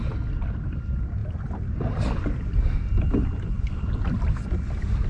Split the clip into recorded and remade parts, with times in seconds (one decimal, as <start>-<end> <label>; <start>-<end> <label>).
0.0-5.1 recorded